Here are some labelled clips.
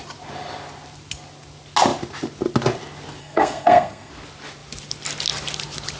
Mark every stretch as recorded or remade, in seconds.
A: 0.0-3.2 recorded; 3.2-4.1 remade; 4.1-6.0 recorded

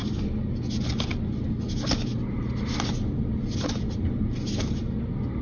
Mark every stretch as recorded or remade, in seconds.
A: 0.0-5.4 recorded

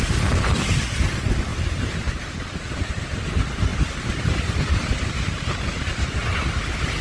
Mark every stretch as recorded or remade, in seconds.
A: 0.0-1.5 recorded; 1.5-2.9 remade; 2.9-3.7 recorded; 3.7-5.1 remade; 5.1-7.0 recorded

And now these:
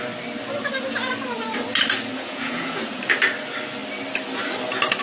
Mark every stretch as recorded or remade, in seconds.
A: 0.0-2.1 recorded; 2.1-3.0 remade; 3.0-5.0 recorded

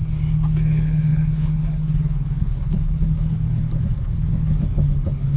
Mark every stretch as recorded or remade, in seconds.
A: 0.0-0.7 recorded; 0.7-5.4 remade

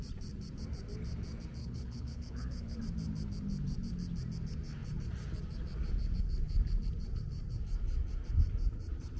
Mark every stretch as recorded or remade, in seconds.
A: 0.0-1.6 recorded; 1.6-2.8 remade; 2.8-9.2 recorded

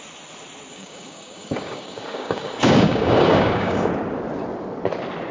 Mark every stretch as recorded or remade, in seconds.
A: 0.0-0.7 recorded; 0.7-3.9 remade; 3.9-5.3 recorded

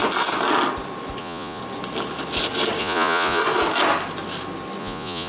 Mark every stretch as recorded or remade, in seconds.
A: 0.0-1.2 recorded; 1.2-1.6 remade; 1.6-2.8 recorded; 2.8-3.4 remade; 3.4-4.8 recorded; 4.8-5.3 remade